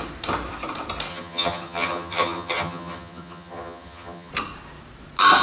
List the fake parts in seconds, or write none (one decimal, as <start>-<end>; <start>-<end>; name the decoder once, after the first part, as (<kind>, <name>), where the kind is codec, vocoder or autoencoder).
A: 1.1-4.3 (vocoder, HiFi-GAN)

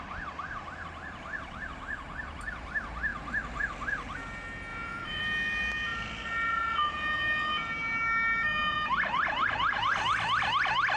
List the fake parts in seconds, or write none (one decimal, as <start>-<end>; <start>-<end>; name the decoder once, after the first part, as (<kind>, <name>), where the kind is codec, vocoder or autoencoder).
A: 4.7-5.2 (vocoder, Vocos)

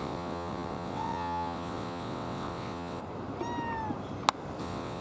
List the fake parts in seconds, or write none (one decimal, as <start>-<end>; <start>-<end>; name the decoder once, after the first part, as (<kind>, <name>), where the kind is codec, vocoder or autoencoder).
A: 0.0-3.0 (vocoder, WaveNeXt); 4.6-5.0

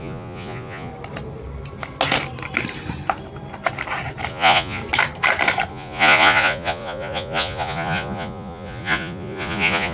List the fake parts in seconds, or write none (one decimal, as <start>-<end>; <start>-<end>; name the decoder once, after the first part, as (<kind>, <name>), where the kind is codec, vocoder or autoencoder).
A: 0.0-0.9 (vocoder, Vocos); 4.3-4.8; 5.7-9.9

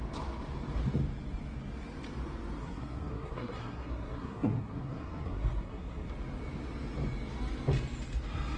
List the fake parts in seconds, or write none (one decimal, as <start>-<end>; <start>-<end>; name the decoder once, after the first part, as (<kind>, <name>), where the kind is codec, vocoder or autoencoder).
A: 2.6-6.1 (codec, SNAC)

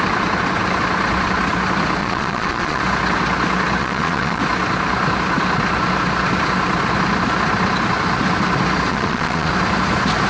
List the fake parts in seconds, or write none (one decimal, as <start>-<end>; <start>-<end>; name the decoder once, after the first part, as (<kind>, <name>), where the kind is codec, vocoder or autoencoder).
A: 2.0-2.8 (vocoder, Vocos); 3.8-4.4; 8.9-9.5

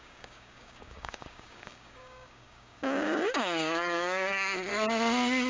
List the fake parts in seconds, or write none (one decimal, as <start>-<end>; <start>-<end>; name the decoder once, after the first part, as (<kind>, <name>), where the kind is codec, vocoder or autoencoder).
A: 0.0-4.7 (codec, DAC)